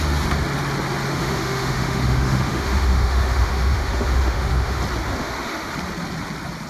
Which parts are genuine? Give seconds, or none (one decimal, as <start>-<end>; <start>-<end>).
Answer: 0.0-1.1; 4.8-5.2; 5.7-6.7